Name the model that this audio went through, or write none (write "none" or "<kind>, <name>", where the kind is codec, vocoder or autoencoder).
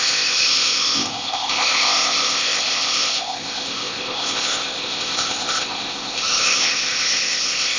codec, ZipCodec